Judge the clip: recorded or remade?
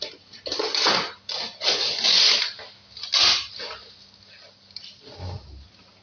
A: recorded